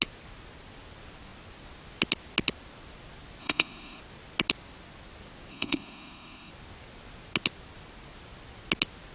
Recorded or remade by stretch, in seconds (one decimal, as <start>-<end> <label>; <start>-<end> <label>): 0.0-3.4 recorded; 3.4-4.0 remade; 4.0-5.5 recorded; 5.5-6.5 remade; 6.5-9.1 recorded